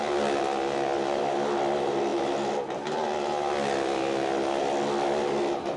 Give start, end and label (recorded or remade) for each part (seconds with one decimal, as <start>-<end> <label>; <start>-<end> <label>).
0.0-5.8 recorded